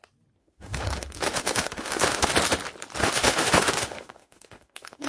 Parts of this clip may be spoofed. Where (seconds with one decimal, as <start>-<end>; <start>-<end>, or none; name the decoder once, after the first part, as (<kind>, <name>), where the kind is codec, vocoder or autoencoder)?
0.4-2.3 (autoencoder, DAC-VAE); 3.0-5.1